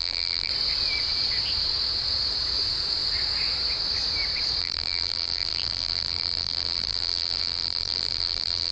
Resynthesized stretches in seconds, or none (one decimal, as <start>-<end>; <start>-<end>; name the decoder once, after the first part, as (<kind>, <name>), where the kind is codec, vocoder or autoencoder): 0.0-0.5 (vocoder, BigVGAN v2); 4.6-8.7